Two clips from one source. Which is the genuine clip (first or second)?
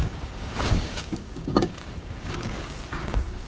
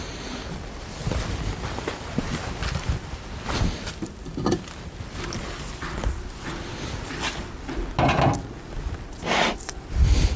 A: second